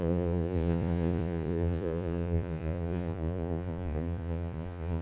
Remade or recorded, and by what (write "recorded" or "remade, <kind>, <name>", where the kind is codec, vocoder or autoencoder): remade, vocoder, Vocos